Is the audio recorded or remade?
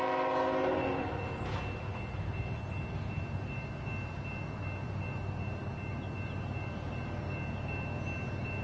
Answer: recorded